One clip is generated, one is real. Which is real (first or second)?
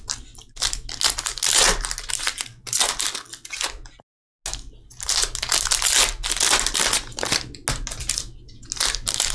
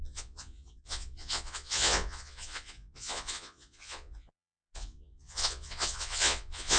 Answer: first